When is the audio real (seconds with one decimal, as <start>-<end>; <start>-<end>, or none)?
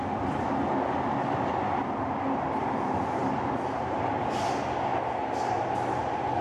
0.0-6.4